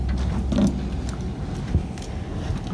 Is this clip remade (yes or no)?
no